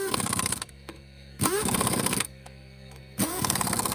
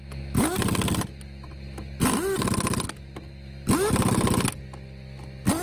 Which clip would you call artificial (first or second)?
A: first